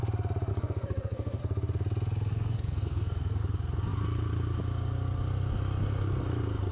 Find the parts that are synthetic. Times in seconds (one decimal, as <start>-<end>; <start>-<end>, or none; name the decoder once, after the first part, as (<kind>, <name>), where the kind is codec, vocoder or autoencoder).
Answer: 0.5-1.4 (codec, SNAC); 2.3-3.4